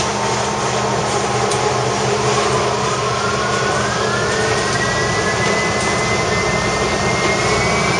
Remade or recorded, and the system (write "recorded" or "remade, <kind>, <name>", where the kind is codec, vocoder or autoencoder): recorded